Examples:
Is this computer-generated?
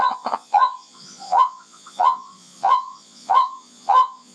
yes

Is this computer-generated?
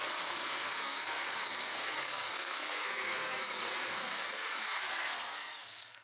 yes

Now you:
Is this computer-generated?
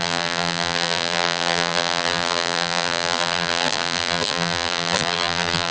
yes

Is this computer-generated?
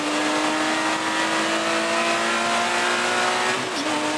no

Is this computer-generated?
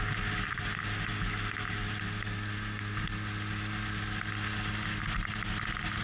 no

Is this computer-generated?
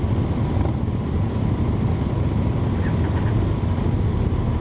no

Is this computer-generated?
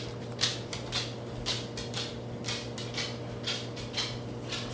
no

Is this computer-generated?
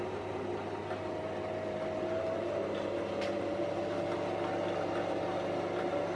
no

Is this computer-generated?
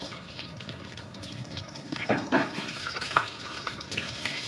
yes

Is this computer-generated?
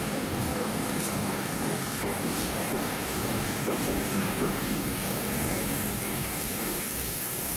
yes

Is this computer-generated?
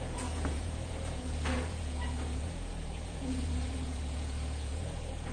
yes